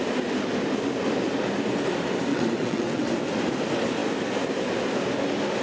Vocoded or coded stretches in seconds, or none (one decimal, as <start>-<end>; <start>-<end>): 2.3-3.1